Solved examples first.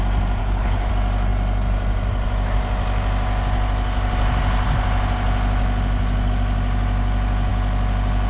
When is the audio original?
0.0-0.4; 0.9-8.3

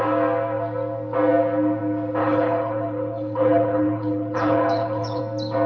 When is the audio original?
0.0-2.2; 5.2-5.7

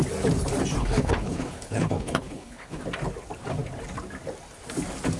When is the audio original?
0.0-0.8; 2.8-5.2

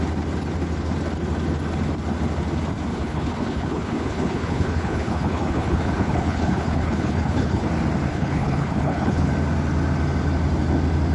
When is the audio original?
0.0-2.9; 7.7-8.1; 9.3-11.1

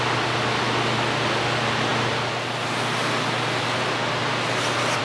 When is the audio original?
0.0-5.0

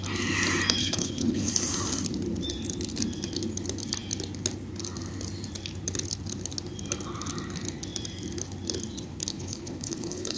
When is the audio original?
0.0-0.8; 1.5-9.3

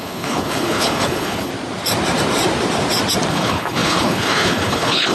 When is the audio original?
1.5-3.3